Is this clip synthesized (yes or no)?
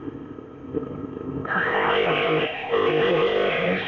yes